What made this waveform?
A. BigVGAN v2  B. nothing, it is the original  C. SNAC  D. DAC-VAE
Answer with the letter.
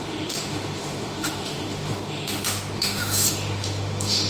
D